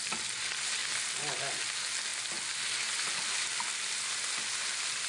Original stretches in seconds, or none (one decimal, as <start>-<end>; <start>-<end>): 0.0-5.1